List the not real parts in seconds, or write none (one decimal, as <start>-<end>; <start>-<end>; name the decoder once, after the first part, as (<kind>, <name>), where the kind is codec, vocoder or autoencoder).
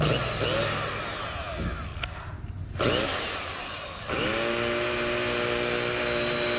none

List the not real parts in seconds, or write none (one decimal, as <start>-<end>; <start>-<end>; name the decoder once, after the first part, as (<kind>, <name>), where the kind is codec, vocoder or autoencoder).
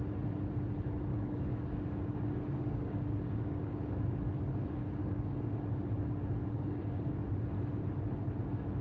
1.1-4.2 (codec, DAC); 5.0-5.5; 6.4-7.2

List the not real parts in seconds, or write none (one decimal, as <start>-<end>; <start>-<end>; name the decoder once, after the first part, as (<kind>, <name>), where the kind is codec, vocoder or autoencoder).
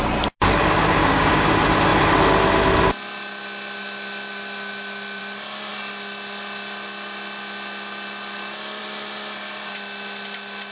1.0-1.5 (codec, DAC)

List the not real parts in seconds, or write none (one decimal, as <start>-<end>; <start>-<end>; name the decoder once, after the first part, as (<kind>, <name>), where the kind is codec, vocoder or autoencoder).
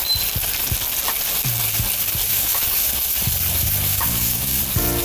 2.3-2.9 (codec, DAC); 3.9-4.6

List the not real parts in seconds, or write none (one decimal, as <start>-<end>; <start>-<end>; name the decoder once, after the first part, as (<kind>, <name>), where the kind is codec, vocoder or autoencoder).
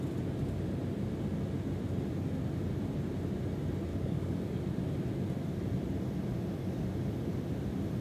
3.9-4.6 (codec, DAC)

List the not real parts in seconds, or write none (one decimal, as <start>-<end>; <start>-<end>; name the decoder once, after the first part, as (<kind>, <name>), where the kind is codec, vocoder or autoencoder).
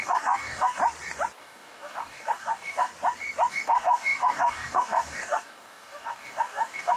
0.0-0.8 (codec, DAC); 1.4-2.9; 3.5-7.0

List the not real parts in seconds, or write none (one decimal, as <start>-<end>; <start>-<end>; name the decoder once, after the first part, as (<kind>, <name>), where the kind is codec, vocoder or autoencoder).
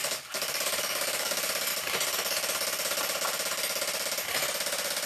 0.0-1.7 (codec, DAC)